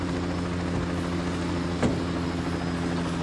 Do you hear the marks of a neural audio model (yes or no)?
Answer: no